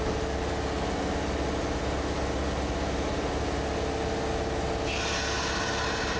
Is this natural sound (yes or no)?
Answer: yes